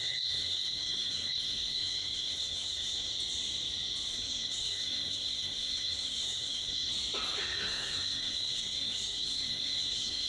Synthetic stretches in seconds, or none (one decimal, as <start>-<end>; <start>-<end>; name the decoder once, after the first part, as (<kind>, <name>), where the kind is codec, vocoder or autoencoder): 0.0-3.1 (codec, SNAC); 4.1-6.9; 7.4-10.3